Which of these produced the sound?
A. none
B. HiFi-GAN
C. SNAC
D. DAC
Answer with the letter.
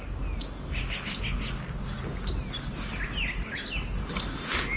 A